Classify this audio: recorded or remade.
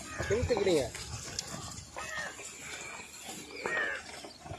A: recorded